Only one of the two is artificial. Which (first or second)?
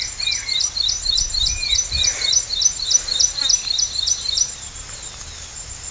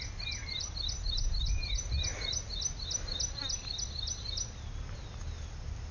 first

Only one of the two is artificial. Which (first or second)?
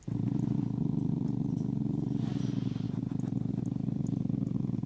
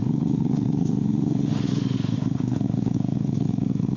second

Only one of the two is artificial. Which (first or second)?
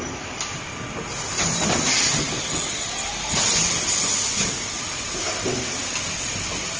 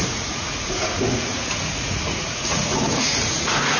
second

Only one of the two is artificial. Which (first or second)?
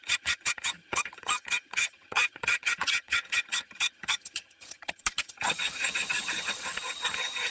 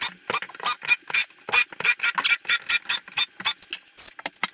first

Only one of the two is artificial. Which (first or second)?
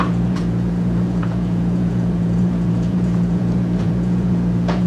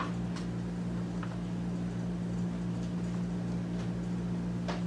first